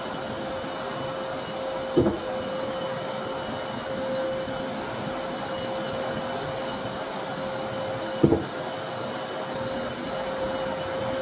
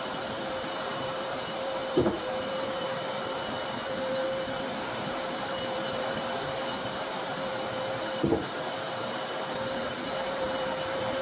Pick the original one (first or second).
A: first